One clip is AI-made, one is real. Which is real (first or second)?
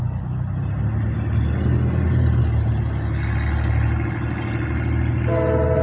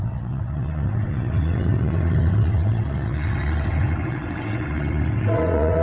first